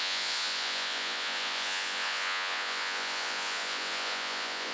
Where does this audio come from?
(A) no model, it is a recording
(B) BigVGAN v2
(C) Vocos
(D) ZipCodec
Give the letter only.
C